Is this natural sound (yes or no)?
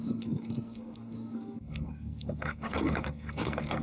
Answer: no